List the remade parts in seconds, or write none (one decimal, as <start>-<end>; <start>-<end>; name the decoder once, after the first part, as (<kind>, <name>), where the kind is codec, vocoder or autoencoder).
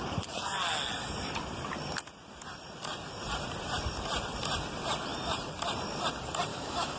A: 6.5-7.0 (autoencoder, DAC-VAE)